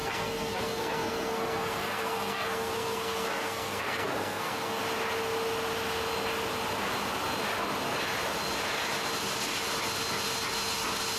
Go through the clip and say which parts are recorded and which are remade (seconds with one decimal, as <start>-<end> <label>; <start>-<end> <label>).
0.0-4.8 remade; 4.8-11.2 recorded